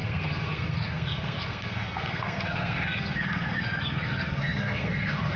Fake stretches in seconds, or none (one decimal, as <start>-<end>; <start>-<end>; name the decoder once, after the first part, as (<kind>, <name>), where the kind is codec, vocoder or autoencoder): 0.0-5.4 (codec, SNAC)